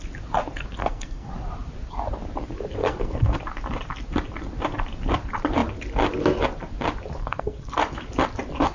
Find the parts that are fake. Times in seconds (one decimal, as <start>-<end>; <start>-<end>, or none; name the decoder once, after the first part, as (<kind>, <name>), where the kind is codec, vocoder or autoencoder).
0.8-1.3 (codec, SNAC); 2.8-3.4; 7.2-7.7